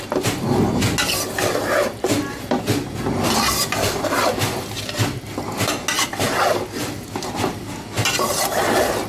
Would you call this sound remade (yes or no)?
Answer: no